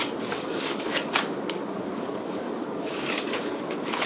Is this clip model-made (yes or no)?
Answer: yes